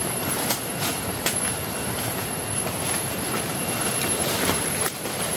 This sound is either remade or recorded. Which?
remade